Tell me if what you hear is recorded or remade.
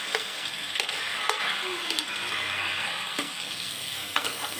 remade